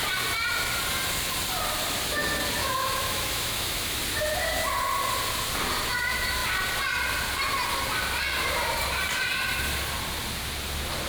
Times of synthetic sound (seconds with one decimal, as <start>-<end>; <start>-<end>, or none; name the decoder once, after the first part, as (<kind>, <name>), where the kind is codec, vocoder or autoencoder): 2.6-4.0 (autoencoder, DAC-VAE)